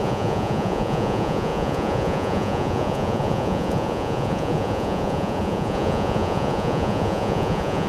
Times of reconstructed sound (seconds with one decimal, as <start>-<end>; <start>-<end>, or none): 0.0-7.9